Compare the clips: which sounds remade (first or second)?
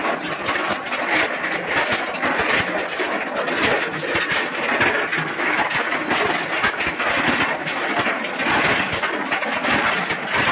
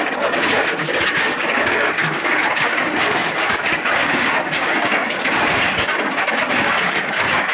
second